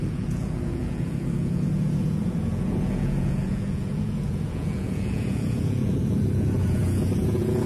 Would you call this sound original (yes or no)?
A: no